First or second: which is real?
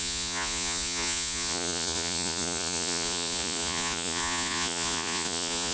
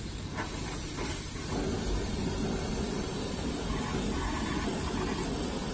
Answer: second